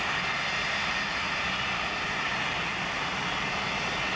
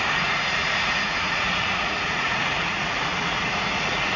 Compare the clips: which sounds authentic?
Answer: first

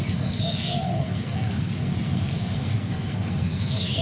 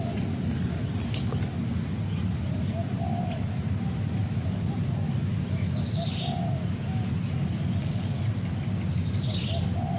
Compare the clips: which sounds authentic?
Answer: second